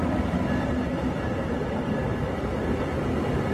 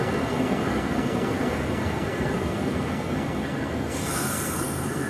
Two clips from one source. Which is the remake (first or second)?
second